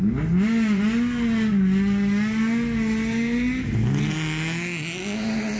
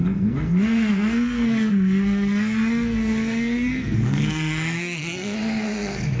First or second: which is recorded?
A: first